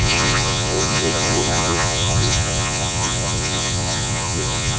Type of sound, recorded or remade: remade